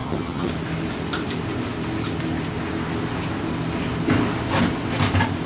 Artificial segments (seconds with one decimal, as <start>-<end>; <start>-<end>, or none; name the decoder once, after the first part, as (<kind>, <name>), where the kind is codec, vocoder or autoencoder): 0.0-0.5 (vocoder, HiFi-GAN)